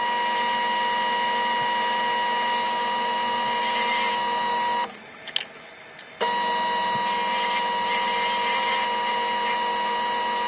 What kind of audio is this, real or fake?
real